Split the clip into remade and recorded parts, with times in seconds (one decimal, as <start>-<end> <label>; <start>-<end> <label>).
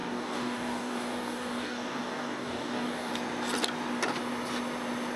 0.0-3.1 remade; 3.1-5.2 recorded